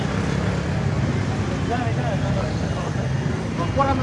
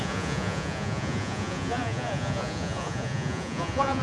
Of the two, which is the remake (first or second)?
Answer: second